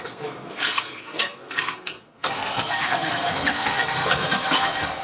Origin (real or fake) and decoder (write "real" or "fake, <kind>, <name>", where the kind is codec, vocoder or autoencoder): fake, codec, SNAC